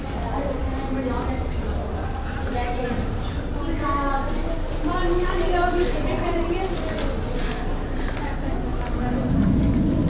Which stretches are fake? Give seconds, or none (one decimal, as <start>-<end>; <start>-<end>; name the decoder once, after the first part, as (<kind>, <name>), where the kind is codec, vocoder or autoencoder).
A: none